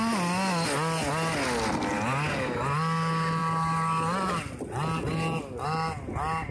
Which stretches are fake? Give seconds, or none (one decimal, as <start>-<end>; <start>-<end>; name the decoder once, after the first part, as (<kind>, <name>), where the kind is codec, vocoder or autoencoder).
none